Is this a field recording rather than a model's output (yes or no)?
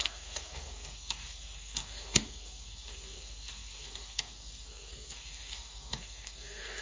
no